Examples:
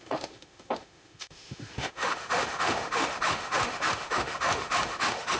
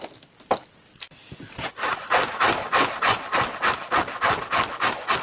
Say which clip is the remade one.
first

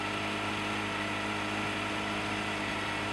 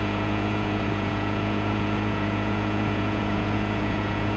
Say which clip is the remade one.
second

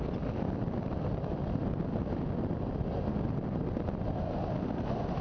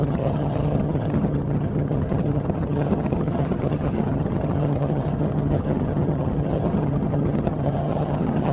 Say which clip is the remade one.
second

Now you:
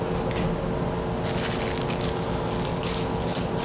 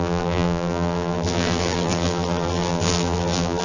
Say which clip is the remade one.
second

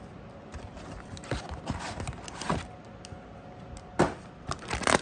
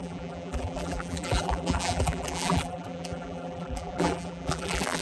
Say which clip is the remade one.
second